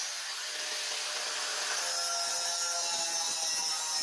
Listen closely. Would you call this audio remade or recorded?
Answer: recorded